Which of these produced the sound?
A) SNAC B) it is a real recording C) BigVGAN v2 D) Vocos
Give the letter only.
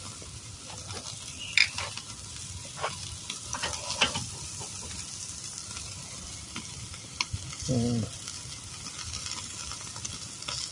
B